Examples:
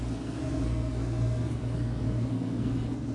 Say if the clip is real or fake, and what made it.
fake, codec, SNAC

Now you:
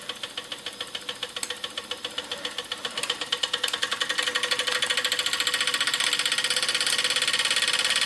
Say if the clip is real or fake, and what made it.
real